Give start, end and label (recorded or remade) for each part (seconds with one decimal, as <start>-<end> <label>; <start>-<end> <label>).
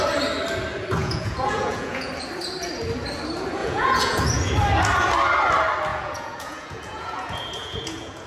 0.0-1.0 recorded; 1.0-2.1 remade; 2.1-3.6 recorded; 3.6-4.2 remade; 4.2-5.9 recorded; 5.9-8.3 remade